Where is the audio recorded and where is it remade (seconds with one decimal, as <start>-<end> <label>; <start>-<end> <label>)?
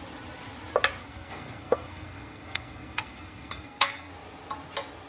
0.0-1.0 recorded; 1.0-4.1 remade; 4.1-5.1 recorded